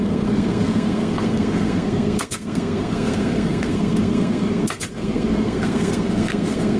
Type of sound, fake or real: fake